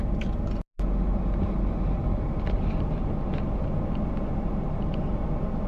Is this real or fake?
real